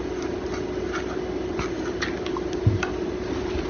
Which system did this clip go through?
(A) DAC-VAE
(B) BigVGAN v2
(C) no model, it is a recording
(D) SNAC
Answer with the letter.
C